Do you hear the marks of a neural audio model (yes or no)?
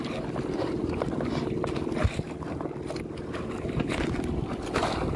no